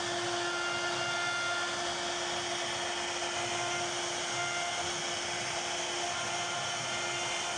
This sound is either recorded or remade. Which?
recorded